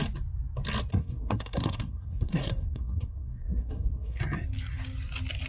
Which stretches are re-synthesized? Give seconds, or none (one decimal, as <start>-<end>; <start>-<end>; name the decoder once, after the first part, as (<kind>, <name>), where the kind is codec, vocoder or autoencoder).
0.9-4.2 (codec, SNAC)